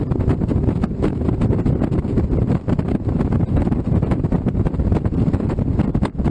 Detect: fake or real fake